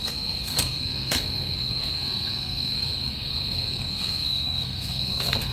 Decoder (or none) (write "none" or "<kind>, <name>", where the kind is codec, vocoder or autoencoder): codec, SNAC